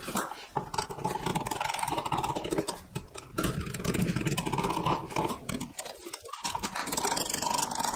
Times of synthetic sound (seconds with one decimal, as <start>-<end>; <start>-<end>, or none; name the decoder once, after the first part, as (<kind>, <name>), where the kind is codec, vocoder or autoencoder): none